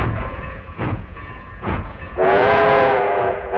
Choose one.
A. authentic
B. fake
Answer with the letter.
B